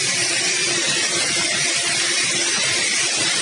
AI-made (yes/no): yes